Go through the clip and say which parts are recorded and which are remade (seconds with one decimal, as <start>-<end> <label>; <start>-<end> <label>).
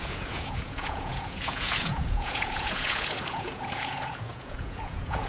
0.0-5.3 remade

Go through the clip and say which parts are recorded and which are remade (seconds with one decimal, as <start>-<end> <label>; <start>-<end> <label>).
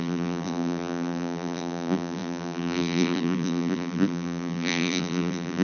0.0-5.6 remade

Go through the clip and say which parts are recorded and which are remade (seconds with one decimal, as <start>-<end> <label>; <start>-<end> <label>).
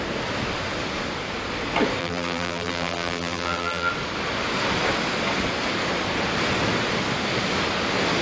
0.0-2.0 recorded; 2.0-3.9 remade; 3.9-8.2 recorded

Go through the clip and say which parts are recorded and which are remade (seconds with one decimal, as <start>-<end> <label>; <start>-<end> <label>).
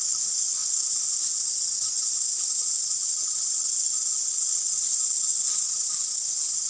0.0-0.6 remade; 0.6-2.4 recorded; 2.4-4.0 remade; 4.0-6.3 recorded; 6.3-6.7 remade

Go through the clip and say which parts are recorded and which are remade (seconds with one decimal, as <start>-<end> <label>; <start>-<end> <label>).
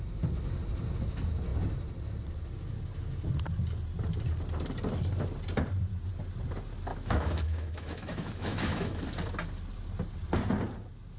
0.0-6.9 recorded; 6.9-9.0 remade; 9.0-11.2 recorded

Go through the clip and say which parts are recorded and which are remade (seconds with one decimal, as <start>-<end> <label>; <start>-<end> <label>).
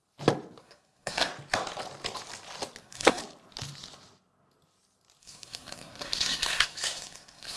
0.0-0.6 recorded; 0.6-1.3 remade; 1.3-2.8 recorded; 2.8-3.2 remade; 3.2-5.2 recorded; 5.2-7.6 remade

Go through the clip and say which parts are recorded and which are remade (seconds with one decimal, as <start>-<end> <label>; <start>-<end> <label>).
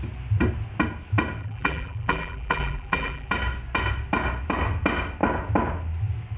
0.0-1.4 recorded; 1.4-3.3 remade; 3.3-6.4 recorded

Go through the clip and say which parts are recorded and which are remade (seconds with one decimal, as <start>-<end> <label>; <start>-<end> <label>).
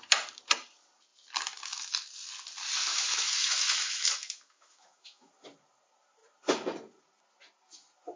0.0-2.9 recorded; 2.9-5.3 remade; 5.3-8.2 recorded